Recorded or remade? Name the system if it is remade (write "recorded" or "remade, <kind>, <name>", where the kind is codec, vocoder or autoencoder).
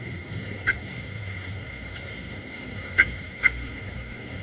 remade, codec, SNAC